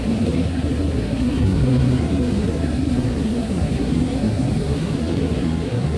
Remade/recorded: remade